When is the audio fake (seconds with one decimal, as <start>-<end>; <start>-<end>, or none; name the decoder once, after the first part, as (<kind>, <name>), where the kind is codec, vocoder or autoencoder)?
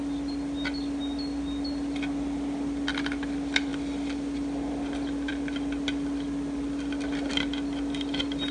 none